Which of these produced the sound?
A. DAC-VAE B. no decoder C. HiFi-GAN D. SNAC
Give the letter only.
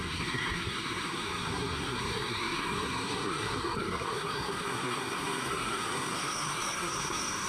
D